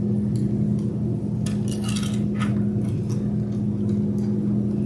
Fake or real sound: real